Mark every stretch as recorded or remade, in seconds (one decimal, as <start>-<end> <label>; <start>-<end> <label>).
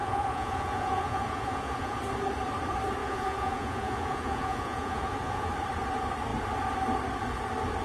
0.0-2.0 remade; 2.0-3.0 recorded; 3.0-5.5 remade; 5.5-7.8 recorded